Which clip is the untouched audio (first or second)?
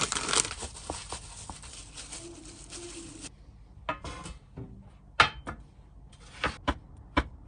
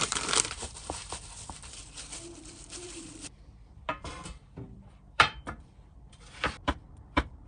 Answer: first